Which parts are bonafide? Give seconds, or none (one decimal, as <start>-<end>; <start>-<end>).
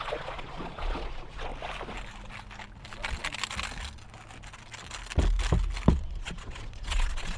1.5-5.9